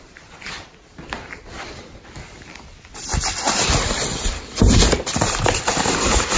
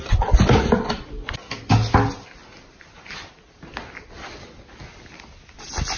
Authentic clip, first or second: second